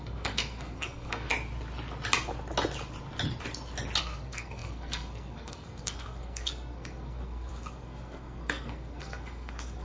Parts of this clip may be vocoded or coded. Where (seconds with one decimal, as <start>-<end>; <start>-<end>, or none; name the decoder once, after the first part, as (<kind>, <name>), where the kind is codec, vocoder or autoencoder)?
0.0-1.3 (codec, SNAC); 4.0-9.8